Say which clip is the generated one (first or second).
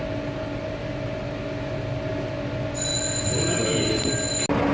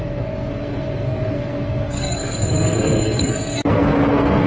second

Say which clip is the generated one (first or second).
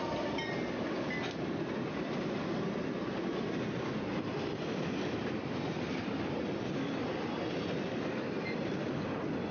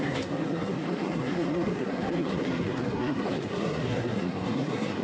second